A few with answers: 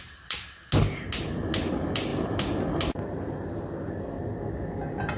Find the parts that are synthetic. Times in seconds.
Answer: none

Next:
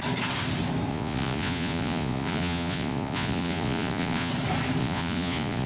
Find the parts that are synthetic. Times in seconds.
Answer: 0.9-4.3 (vocoder, Vocos); 4.8-5.7

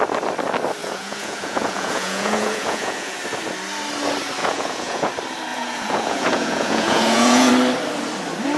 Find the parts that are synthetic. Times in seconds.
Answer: 0.8-3.2 (vocoder, Vocos); 4.4-5.1; 5.5-7.5